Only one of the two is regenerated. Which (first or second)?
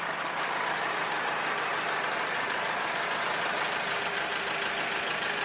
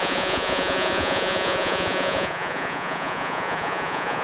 second